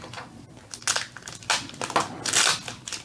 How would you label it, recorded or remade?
recorded